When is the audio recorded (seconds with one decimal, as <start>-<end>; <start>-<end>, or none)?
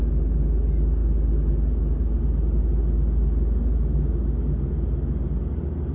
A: 0.0-5.9